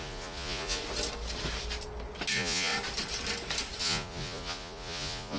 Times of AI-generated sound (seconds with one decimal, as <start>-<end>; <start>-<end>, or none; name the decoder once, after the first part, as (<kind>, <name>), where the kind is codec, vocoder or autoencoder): 0.0-0.8 (vocoder, Vocos); 2.3-2.7; 3.8-5.4